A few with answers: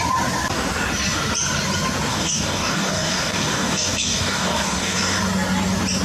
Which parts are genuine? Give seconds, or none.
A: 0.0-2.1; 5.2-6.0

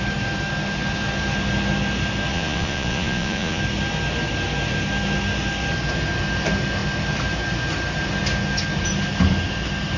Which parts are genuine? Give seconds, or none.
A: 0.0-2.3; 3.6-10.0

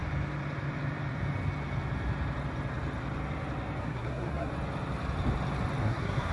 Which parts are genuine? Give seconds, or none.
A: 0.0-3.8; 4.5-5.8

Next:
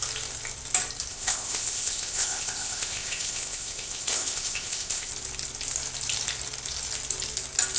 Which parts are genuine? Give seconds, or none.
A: 0.0-1.1; 5.1-7.8